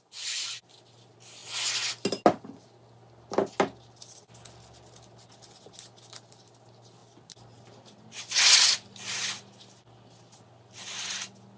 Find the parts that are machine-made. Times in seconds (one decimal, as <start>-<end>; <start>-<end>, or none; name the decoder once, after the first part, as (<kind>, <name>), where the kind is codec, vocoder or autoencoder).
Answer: none